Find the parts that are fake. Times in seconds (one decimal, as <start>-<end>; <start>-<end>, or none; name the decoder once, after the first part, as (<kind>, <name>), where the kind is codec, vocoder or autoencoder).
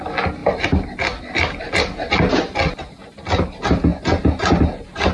none